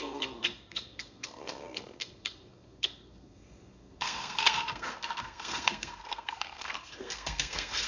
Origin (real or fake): fake